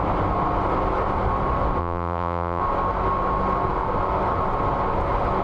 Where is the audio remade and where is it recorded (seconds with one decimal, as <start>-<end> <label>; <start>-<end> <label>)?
0.0-1.8 recorded; 1.8-2.6 remade; 2.6-5.4 recorded